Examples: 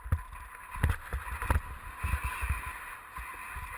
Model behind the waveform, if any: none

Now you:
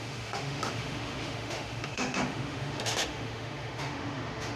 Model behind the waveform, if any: autoencoder, DAC-VAE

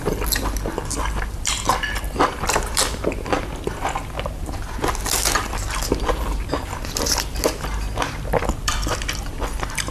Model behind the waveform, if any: none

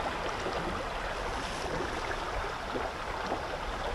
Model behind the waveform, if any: none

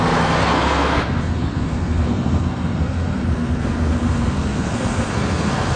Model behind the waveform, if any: codec, SNAC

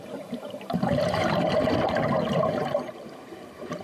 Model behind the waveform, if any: vocoder, BigVGAN v2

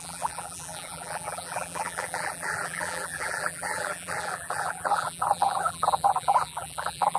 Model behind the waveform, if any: vocoder, BigVGAN v2